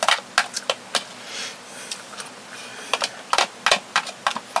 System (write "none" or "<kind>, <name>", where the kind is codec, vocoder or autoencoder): none